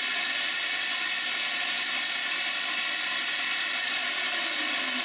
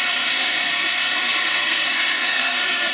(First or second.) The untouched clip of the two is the first